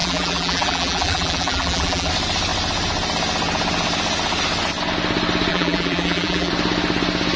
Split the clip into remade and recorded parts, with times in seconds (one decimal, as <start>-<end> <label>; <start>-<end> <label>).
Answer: 0.0-2.1 remade; 2.1-5.5 recorded; 5.5-6.5 remade; 6.5-7.4 recorded